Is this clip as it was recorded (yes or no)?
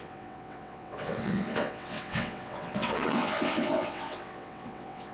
no